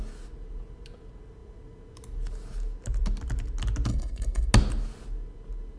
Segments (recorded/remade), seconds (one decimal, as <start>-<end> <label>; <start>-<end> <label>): 0.0-3.9 recorded; 3.9-4.5 remade; 4.5-5.8 recorded